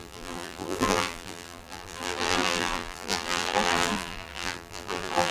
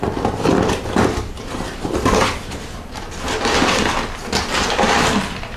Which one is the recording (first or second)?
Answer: second